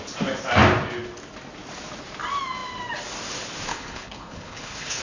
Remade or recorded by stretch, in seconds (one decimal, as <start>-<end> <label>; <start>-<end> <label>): 0.0-3.7 recorded; 3.7-5.0 remade